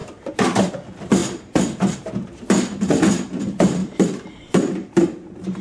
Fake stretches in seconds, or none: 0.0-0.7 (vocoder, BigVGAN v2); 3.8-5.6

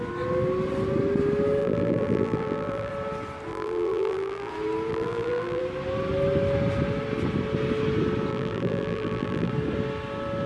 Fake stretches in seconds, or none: 1.6-2.9 (vocoder, BigVGAN v2); 3.5-4.5; 4.9-5.6; 8.3-9.5

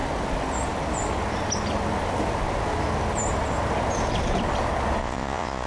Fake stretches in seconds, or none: 5.0-5.7 (vocoder, Vocos)

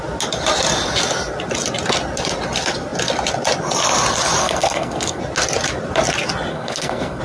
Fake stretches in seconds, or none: 4.4-5.2 (codec, SNAC); 6.5-7.2

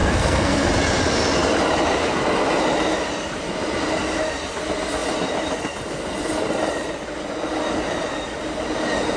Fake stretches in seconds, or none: 0.0-0.7 (codec, SNAC)